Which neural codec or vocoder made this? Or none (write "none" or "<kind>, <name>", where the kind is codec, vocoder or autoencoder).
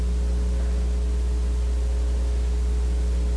none